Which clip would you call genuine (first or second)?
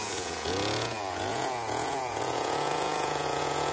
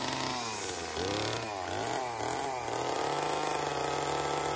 second